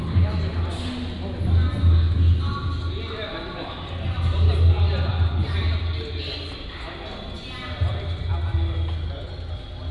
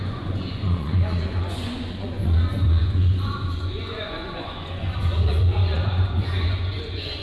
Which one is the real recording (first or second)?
first